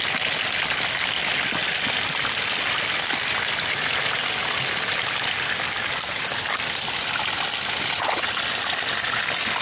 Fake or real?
real